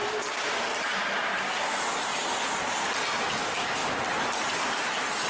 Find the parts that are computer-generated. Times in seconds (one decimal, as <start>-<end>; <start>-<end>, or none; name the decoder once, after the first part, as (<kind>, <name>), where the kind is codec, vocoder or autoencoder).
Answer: 2.1-2.6 (vocoder, BigVGAN v2); 3.8-5.3